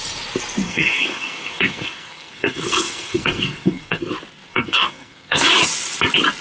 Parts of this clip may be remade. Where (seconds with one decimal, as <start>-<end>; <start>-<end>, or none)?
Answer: 0.6-4.1; 4.5-5.5